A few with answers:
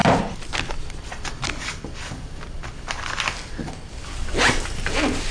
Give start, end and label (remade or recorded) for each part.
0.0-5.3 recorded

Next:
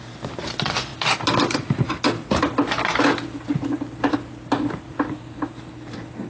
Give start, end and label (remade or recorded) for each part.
0.0-6.3 recorded

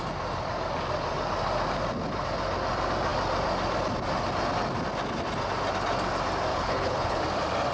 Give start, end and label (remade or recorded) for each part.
0.0-6.5 recorded; 6.5-7.2 remade; 7.2-7.7 recorded